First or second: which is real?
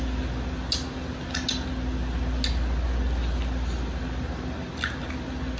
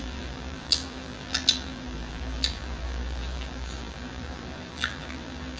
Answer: first